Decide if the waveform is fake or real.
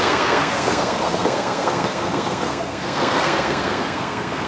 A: fake